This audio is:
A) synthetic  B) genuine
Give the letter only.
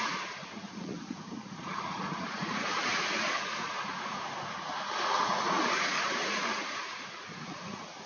A